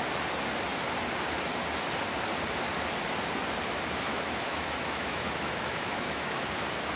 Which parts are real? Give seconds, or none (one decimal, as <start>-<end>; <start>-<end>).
0.0-4.1; 6.5-7.0